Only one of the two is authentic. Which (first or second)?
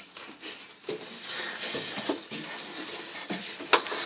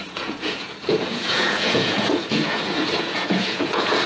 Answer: first